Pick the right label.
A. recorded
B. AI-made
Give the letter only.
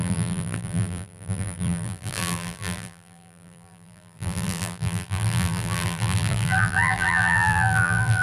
B